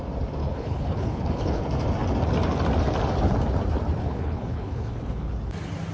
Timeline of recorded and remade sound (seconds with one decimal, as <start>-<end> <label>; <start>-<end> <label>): 0.0-0.4 recorded; 0.4-1.6 remade; 1.6-4.0 recorded; 4.0-5.3 remade; 5.3-5.9 recorded